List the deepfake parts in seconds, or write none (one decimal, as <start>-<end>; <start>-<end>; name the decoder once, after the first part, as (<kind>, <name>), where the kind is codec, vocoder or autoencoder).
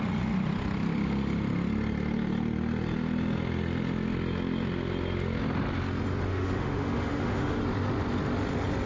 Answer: 6.3-7.6 (autoencoder, DAC-VAE)